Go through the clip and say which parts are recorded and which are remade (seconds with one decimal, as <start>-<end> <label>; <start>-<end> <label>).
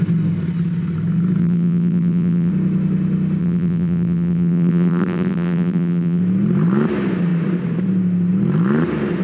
0.0-1.4 recorded; 1.4-2.5 remade; 2.5-3.4 recorded; 3.4-6.2 remade; 6.2-9.2 recorded